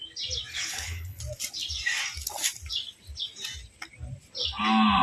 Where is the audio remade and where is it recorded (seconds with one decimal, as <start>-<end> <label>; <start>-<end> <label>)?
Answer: 0.0-0.5 recorded; 0.5-1.2 remade; 1.2-5.0 recorded